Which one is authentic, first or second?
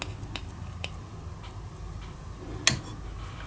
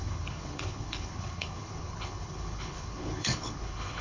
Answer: first